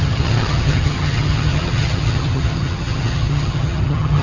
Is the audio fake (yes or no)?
yes